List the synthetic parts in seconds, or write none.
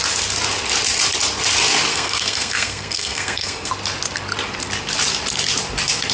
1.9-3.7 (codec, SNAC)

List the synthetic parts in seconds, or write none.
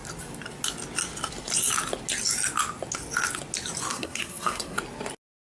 3.9-4.8 (codec, SNAC)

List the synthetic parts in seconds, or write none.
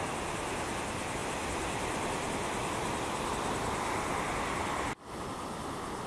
none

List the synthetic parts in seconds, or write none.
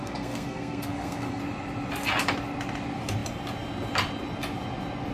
0.0-1.4 (codec, SNAC)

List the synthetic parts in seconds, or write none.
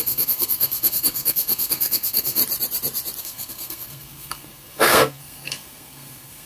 0.0-2.4 (codec, SNAC); 3.2-6.5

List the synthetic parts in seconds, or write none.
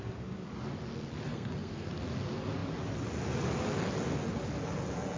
1.3-1.9 (codec, SNAC)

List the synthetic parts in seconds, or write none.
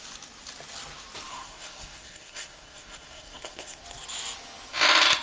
1.3-3.8 (codec, SNAC)